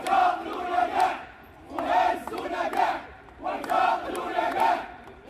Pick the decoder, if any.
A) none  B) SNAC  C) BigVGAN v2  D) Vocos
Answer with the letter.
C